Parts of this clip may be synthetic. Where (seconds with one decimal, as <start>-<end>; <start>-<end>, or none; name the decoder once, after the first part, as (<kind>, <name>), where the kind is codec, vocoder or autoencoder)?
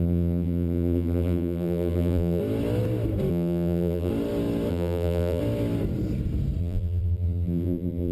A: 0.0-2.4 (vocoder, BigVGAN v2); 3.3-4.1; 4.7-5.4; 6.6-8.1